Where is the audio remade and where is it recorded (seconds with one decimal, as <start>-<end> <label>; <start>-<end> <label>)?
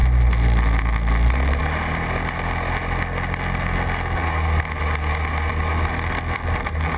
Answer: 0.0-7.0 recorded